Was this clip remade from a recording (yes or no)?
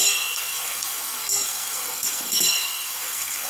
yes